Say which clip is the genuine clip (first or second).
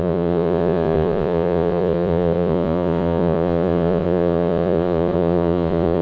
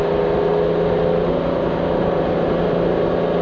second